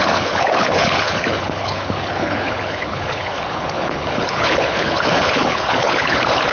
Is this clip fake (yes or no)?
yes